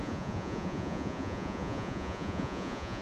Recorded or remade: remade